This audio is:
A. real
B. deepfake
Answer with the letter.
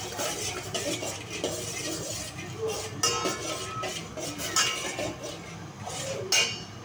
A